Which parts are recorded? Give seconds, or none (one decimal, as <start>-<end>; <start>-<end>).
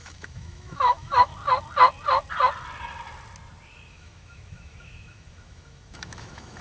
1.3-3.9